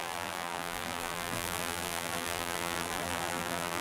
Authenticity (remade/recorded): remade